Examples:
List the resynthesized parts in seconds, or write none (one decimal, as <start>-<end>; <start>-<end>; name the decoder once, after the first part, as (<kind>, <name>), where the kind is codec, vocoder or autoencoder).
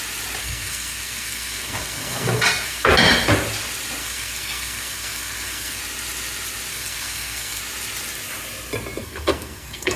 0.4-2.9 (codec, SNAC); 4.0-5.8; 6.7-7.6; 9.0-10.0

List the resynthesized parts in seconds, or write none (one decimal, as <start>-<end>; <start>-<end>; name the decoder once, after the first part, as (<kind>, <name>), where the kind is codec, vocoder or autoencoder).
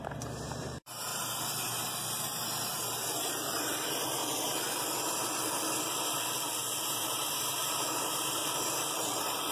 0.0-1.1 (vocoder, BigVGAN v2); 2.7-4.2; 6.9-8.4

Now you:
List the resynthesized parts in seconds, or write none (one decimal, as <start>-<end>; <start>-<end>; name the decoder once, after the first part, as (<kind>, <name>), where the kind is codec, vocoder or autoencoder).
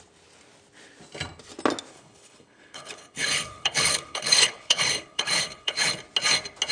1.9-5.9 (codec, HILCodec)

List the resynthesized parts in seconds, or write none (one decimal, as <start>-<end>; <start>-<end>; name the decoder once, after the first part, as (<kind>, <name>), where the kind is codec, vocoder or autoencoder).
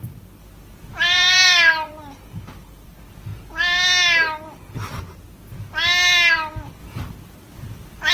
0.0-1.9 (vocoder, BigVGAN v2); 2.5-3.3; 6.3-8.1